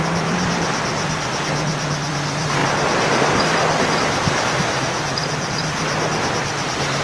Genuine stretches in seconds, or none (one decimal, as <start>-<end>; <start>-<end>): 0.0-7.0